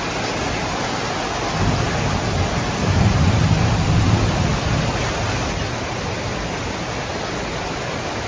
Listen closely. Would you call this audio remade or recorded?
recorded